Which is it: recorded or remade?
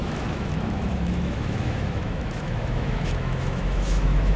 remade